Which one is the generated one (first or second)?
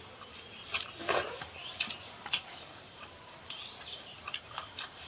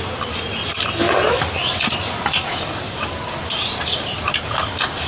first